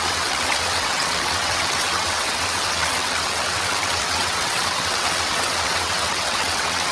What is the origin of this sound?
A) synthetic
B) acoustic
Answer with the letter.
A